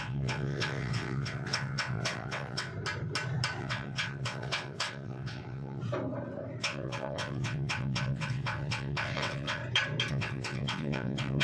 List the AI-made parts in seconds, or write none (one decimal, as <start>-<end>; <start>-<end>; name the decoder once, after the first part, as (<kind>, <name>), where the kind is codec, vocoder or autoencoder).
0.0-2.7 (vocoder, WaveNeXt); 3.6-5.8; 6.6-9.6; 10.1-11.4